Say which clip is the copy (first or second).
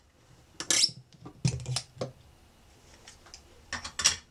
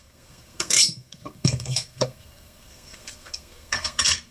second